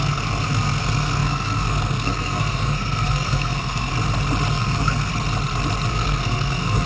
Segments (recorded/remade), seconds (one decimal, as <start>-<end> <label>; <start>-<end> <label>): 0.0-3.9 remade; 3.9-4.5 recorded; 4.5-5.1 remade; 5.1-5.9 recorded; 5.9-6.9 remade